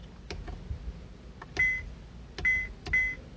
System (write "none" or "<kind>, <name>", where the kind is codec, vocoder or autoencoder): none